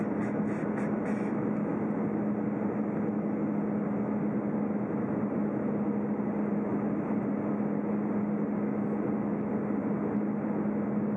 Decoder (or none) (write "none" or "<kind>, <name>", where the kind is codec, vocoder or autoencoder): none